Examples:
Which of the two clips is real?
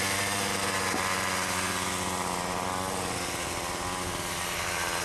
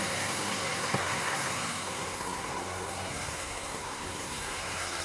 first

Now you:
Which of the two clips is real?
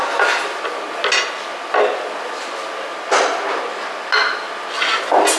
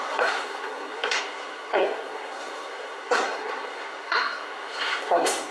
first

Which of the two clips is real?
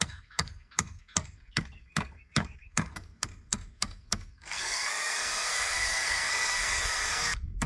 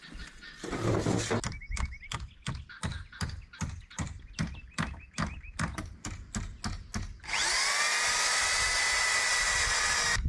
second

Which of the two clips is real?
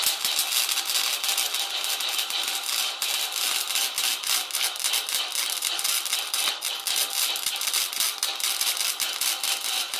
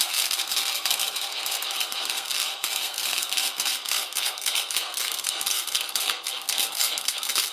first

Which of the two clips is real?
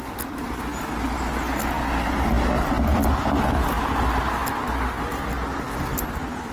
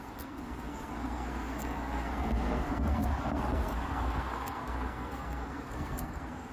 first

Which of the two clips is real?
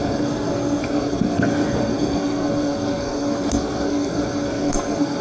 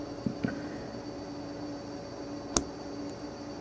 second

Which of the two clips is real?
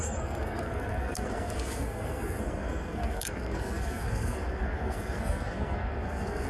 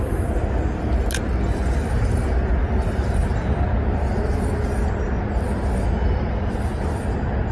second